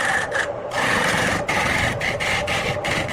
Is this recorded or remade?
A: remade